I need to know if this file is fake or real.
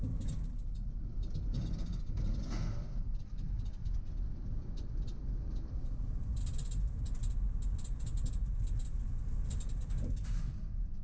real